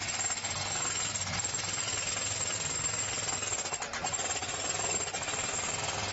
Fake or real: real